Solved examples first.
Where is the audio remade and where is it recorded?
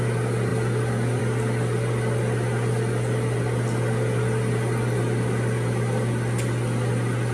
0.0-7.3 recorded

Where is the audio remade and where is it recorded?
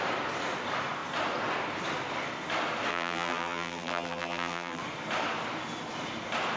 0.0-2.9 recorded; 2.9-4.8 remade; 4.8-6.6 recorded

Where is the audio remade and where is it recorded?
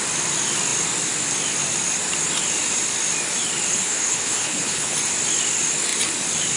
0.0-3.7 recorded; 3.7-4.9 remade; 4.9-6.6 recorded